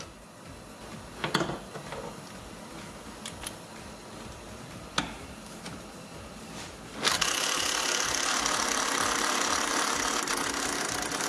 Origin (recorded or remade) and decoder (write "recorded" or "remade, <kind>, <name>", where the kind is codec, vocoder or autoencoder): recorded